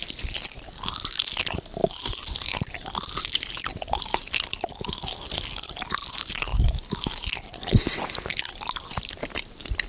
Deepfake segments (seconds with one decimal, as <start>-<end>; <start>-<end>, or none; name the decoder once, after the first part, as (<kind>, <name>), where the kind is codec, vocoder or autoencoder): 0.0-1.8 (vocoder, BigVGAN v2); 2.5-6.5; 8.9-9.9